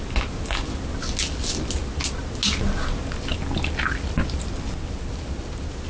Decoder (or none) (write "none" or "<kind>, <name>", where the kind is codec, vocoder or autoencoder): none